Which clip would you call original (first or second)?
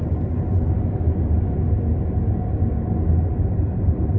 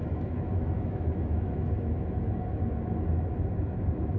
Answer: first